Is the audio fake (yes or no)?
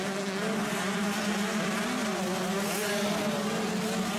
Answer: no